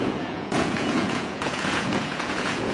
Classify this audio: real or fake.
fake